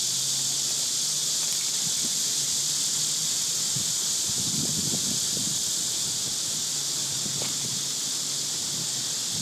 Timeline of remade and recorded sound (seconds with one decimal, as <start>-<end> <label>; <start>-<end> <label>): 0.0-1.2 recorded; 1.2-2.6 remade; 2.6-9.4 recorded